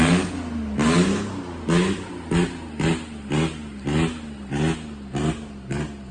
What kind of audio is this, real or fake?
real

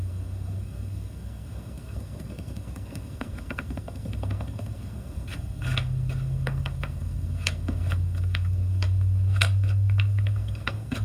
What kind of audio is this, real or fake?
fake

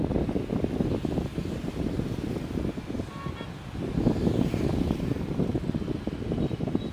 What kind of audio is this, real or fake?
real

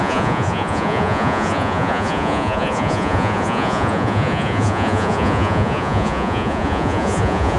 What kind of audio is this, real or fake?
fake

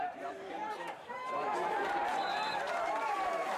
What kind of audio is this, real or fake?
fake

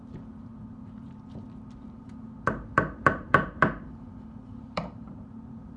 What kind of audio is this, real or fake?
fake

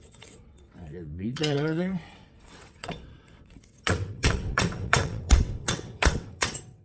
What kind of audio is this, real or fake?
fake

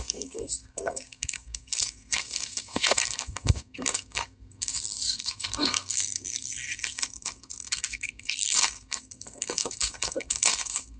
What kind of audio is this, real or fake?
fake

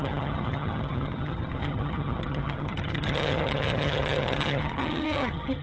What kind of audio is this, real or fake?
fake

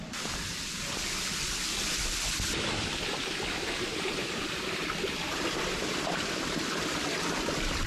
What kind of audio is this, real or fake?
fake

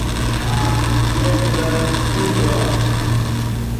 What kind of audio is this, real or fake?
real